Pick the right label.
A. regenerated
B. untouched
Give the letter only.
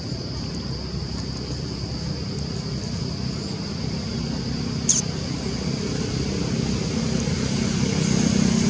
B